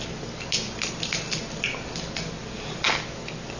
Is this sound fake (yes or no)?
no